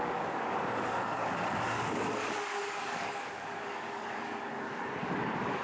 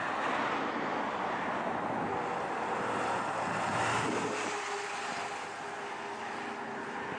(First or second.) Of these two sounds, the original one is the second